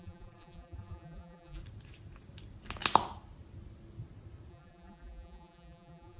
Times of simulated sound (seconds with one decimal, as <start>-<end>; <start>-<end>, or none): 0.0-1.6; 4.5-6.2